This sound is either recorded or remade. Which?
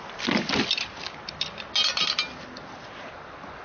recorded